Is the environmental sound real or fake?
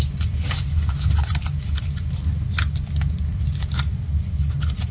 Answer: real